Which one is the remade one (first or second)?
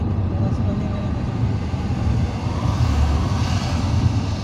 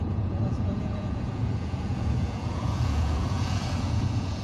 second